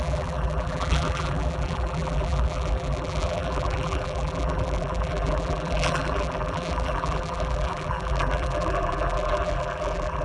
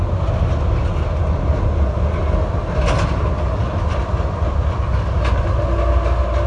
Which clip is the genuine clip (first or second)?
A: second